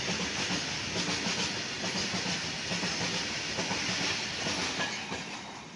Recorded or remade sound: recorded